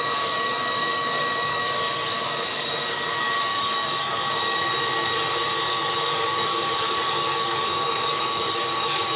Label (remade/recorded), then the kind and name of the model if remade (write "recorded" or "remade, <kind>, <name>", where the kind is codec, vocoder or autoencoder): remade, codec, DAC